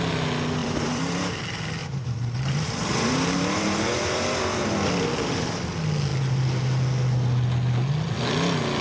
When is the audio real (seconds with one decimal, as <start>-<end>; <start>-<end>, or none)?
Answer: 0.0-0.6; 1.3-1.8; 4.4-8.8